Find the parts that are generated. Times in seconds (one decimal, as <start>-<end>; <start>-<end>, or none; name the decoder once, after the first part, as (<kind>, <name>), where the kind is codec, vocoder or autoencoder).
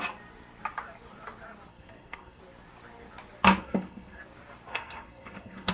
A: 1.7-2.4 (codec, SNAC); 3.6-4.2; 4.7-5.7